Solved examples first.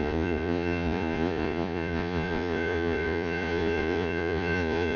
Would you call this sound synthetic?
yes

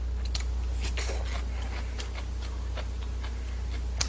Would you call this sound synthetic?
no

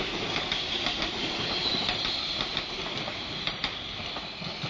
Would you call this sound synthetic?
no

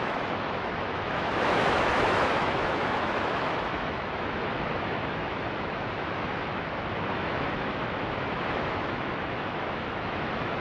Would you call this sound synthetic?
yes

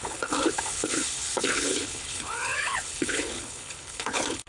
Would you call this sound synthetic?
yes